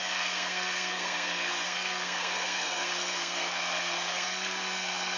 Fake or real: fake